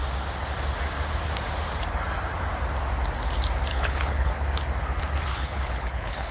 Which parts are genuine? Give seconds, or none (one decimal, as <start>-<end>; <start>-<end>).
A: 0.0-3.7; 4.3-5.3